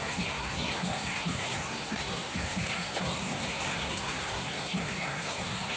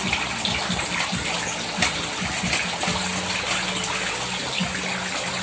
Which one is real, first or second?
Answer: second